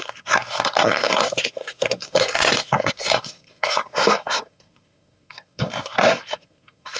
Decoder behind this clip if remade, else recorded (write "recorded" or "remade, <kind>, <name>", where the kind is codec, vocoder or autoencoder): remade, codec, SNAC